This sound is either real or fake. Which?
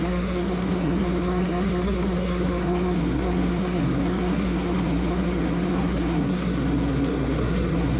fake